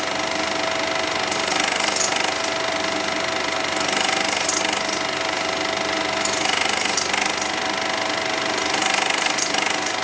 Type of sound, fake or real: real